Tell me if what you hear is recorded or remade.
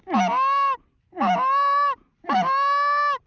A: recorded